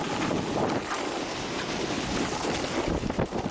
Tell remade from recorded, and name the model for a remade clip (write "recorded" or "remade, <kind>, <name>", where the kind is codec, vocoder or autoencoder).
recorded